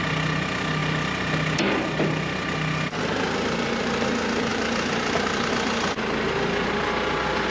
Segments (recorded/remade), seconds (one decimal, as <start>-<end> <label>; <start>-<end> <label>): 0.0-4.5 recorded; 4.5-5.5 remade; 5.5-7.5 recorded

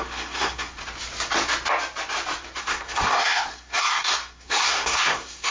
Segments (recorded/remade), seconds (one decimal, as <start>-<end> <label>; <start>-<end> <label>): 0.0-0.8 remade; 0.8-2.6 recorded; 2.6-5.5 remade